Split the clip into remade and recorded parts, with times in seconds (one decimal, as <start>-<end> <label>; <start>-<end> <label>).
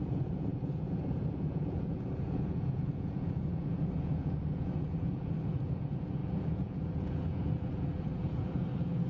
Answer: 0.0-9.1 remade